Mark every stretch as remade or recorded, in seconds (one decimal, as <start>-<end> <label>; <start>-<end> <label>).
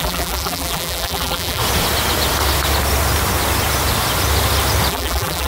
0.0-1.6 remade; 1.6-4.9 recorded; 4.9-5.5 remade